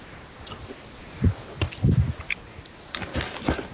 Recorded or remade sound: recorded